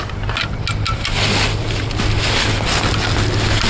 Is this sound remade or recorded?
recorded